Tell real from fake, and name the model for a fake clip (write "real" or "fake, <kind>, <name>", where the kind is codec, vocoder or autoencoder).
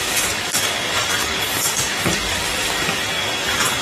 fake, codec, DAC